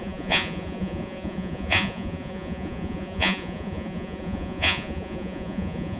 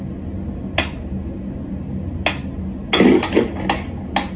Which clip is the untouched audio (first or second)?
second